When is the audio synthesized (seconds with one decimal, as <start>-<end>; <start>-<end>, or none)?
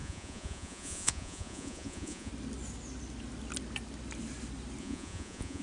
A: 0.0-2.3; 4.8-5.6